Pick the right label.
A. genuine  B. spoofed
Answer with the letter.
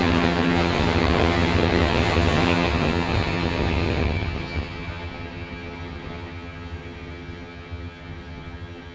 B